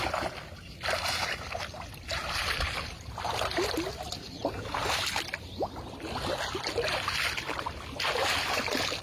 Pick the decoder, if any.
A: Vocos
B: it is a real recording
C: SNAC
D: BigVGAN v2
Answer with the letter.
B